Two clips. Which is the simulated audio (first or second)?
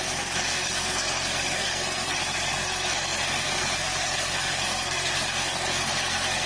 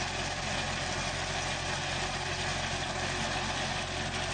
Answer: first